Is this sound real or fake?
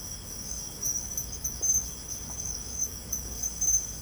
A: fake